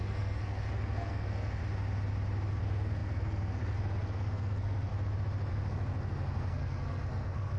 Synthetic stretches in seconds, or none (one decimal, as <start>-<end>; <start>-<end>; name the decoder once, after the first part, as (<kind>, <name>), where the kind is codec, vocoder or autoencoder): 0.0-1.6 (codec, SNAC); 2.6-4.9; 5.5-7.6